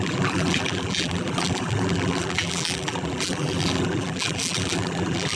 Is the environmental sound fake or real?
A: fake